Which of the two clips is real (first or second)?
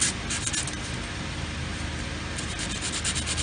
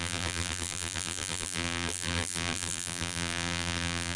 first